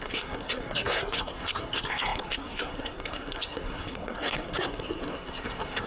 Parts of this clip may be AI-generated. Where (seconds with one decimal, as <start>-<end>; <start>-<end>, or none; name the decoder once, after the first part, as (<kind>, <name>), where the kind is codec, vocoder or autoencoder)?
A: 0.0-5.9 (codec, SNAC)